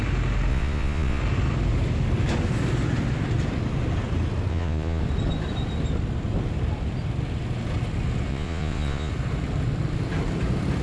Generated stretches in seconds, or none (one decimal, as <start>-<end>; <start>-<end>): 0.5-1.2; 4.5-5.0; 8.3-9.1